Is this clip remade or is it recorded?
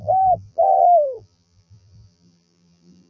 remade